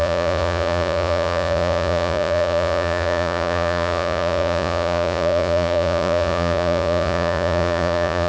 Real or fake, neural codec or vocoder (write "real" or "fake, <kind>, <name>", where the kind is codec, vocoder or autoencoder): fake, vocoder, Vocos